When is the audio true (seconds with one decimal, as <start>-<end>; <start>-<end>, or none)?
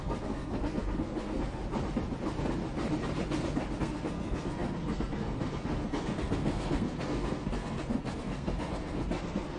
1.6-3.8